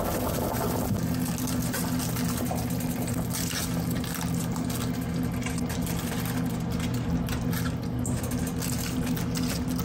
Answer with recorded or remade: recorded